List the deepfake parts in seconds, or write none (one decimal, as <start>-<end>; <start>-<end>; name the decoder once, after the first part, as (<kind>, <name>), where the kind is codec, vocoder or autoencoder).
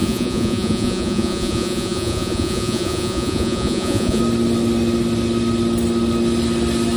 0.0-4.2 (vocoder, Vocos)